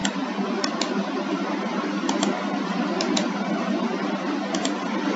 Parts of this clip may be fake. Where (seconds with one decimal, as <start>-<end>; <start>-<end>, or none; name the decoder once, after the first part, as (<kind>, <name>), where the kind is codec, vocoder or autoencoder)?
none